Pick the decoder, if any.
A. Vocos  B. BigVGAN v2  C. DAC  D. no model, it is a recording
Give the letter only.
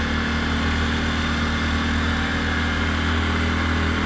D